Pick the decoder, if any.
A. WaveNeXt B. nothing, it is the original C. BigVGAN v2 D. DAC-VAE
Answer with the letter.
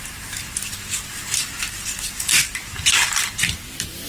B